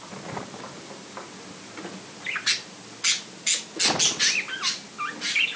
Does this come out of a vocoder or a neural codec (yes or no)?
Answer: no